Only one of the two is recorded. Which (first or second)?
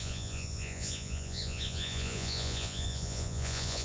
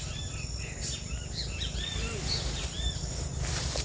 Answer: second